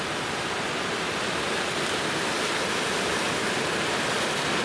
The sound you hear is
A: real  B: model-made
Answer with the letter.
A